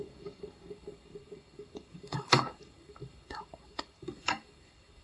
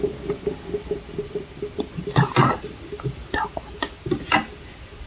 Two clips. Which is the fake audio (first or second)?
first